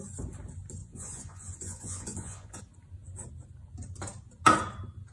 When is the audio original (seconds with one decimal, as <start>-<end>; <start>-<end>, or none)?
0.0-0.8; 2.6-5.1